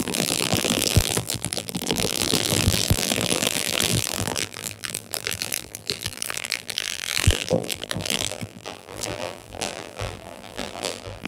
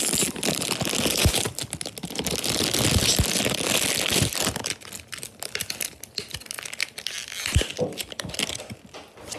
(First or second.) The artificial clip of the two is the first